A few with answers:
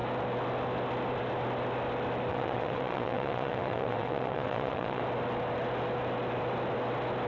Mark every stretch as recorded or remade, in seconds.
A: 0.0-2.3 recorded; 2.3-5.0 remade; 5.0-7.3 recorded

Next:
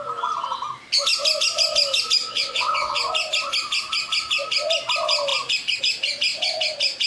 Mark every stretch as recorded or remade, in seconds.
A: 0.0-2.2 recorded; 2.2-3.0 remade; 3.0-7.1 recorded

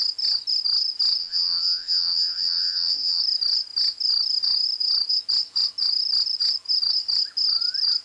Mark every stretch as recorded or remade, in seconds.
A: 0.0-1.2 recorded; 1.2-3.2 remade; 3.2-8.0 recorded

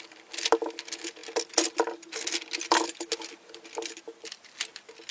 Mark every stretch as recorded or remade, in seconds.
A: 0.0-5.1 recorded